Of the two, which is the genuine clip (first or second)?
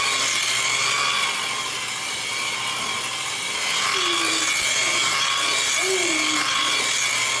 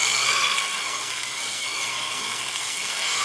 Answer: first